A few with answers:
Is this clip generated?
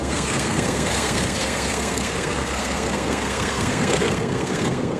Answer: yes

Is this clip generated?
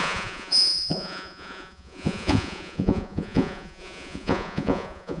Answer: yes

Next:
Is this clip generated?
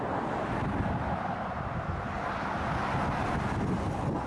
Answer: no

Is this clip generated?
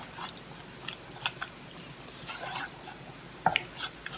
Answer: no